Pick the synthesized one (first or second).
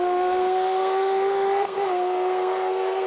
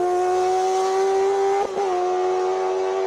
first